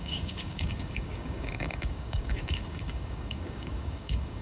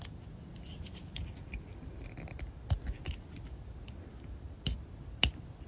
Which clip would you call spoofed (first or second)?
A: first